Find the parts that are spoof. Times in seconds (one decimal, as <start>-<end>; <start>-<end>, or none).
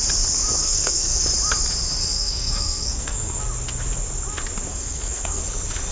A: 0.6-1.2; 2.0-3.4; 4.7-5.4